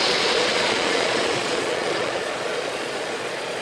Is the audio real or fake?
fake